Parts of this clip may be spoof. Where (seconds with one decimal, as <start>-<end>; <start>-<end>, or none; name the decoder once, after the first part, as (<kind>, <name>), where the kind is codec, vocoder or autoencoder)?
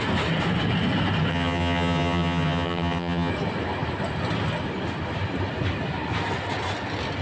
1.3-3.3 (vocoder, HiFi-GAN)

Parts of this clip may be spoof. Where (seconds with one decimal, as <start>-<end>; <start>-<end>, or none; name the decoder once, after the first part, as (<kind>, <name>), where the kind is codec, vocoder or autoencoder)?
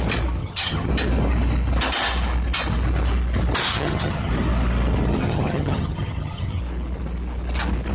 0.4-0.9 (vocoder, HiFi-GAN); 3.7-4.3; 5.1-6.6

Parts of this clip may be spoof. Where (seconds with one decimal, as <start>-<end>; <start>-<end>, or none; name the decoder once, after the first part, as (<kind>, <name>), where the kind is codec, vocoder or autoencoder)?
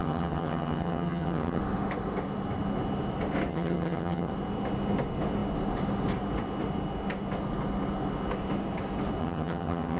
0.0-1.6 (vocoder, HiFi-GAN); 3.5-4.3; 9.2-10.0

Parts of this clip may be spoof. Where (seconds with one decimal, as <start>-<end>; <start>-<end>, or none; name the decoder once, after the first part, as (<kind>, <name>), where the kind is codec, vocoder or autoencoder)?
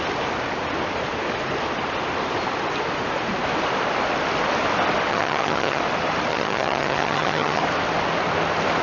5.1-5.8 (vocoder, HiFi-GAN); 6.3-7.6